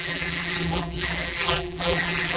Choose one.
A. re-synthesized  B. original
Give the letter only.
A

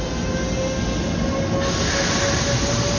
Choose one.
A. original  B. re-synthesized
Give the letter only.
A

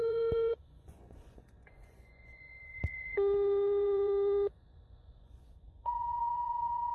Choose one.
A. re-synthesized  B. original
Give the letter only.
A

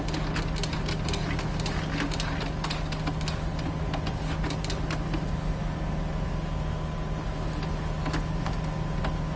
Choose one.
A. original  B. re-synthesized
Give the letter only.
A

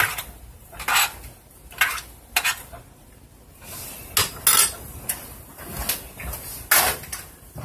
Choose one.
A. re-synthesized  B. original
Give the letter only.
B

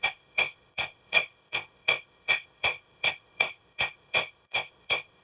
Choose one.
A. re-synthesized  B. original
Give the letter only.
A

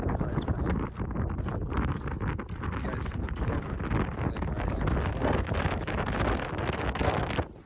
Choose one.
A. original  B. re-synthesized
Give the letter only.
A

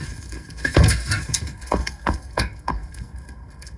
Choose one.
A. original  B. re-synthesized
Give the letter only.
B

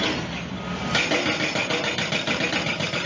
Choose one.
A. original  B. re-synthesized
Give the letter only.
A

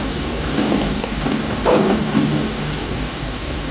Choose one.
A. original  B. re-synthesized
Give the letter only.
B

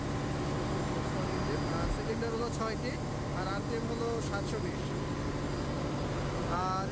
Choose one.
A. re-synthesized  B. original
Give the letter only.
B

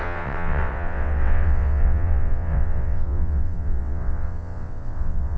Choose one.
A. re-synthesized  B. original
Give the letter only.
A